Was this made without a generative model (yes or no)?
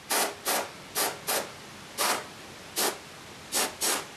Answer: yes